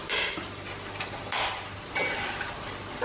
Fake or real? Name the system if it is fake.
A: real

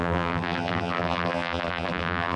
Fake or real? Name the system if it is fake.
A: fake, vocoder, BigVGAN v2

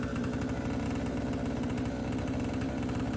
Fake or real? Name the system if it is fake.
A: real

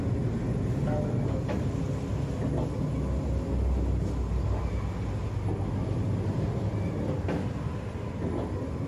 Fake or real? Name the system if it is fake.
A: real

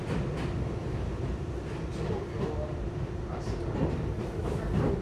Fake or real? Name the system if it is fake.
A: fake, vocoder, BigVGAN v2